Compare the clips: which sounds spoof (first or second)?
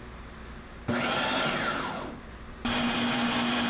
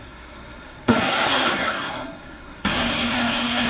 second